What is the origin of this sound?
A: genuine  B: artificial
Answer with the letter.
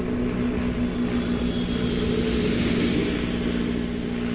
A